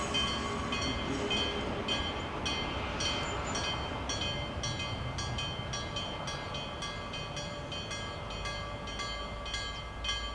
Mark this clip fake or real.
real